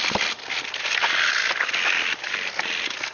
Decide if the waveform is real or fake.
real